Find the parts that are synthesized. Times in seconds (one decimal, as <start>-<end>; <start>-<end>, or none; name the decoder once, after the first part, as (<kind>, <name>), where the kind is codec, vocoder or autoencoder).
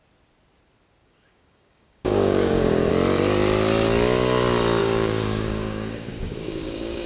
1.0-2.9 (codec, DAC); 4.8-7.1